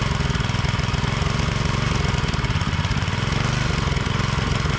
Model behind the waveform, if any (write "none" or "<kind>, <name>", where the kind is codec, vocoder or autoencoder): none